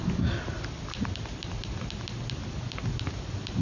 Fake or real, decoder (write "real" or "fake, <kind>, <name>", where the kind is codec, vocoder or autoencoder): fake, vocoder, BigVGAN v2